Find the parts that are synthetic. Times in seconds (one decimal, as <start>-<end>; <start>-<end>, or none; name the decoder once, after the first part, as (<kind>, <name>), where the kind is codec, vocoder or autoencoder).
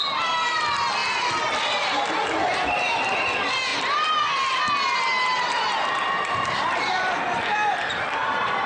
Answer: none